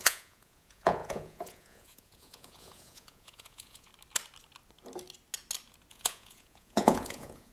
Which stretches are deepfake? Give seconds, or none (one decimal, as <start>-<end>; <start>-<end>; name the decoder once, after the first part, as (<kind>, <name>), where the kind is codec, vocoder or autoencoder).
0.0-3.9 (vocoder, Vocos); 5.9-7.5